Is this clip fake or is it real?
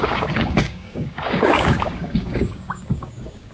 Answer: fake